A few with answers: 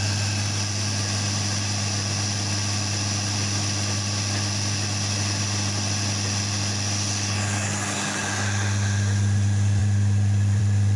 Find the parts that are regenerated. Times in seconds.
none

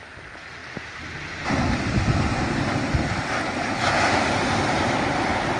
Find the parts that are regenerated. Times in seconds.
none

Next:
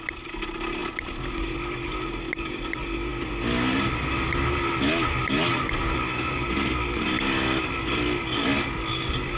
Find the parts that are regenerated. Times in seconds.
none

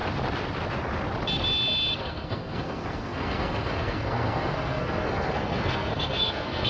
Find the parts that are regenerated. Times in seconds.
2.0-6.7 (codec, SNAC)

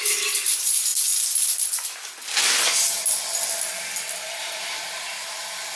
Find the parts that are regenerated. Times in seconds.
0.0-0.9 (vocoder, BigVGAN v2); 4.4-5.8

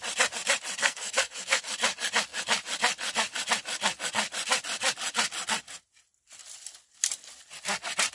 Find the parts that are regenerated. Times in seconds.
0.8-1.6 (codec, SNAC)

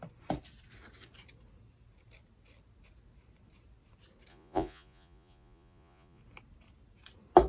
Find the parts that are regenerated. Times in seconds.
4.3-6.2 (vocoder, Vocos)

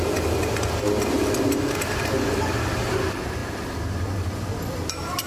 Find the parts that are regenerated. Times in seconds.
none